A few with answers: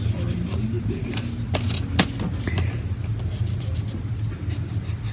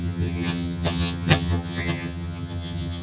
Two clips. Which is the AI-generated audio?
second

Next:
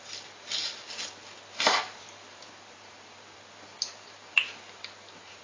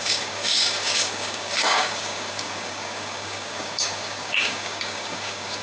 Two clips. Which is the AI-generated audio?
second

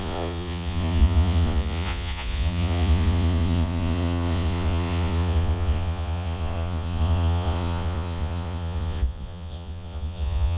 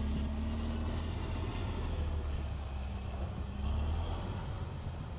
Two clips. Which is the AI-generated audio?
first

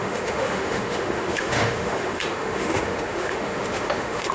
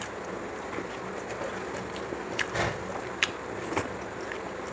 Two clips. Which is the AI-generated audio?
first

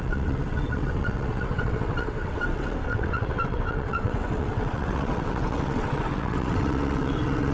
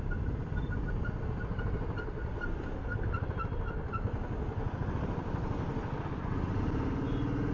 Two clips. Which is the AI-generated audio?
first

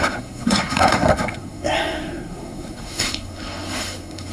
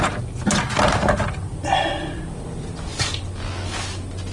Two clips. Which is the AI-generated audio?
first